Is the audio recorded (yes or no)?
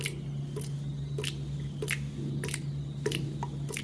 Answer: yes